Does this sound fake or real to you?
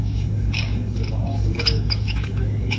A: fake